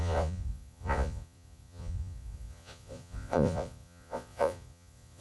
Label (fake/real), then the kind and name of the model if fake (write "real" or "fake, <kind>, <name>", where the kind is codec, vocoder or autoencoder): fake, vocoder, Vocos